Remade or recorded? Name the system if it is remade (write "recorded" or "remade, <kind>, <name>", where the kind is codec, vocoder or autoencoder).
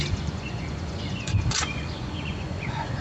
remade, vocoder, Vocos